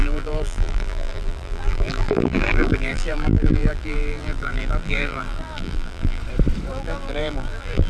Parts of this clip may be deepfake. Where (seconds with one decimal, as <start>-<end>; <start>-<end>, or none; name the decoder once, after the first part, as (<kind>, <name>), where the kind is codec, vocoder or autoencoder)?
0.0-6.2 (vocoder, BigVGAN v2); 6.7-7.9